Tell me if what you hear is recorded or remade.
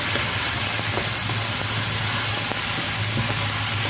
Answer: recorded